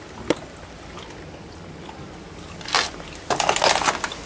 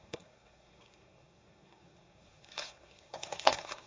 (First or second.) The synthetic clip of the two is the second